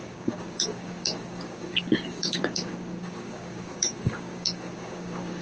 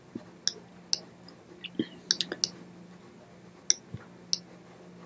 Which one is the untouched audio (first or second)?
second